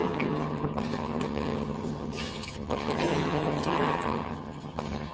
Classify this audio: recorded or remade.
remade